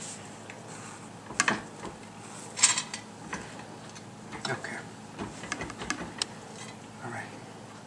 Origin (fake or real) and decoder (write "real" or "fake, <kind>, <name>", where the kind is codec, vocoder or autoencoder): real